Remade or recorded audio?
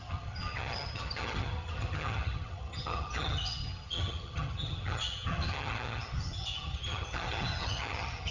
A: remade